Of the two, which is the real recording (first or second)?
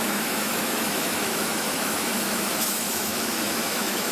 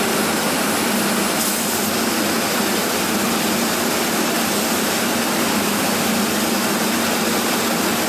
second